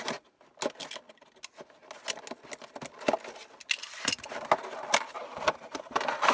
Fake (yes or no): no